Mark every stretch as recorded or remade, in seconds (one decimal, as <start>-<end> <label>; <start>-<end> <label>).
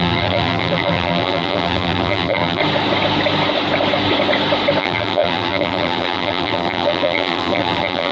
0.0-2.6 remade; 2.6-4.8 recorded; 4.8-8.1 remade